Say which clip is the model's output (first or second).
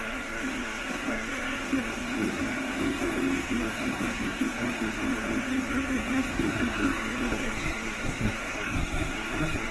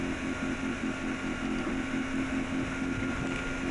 first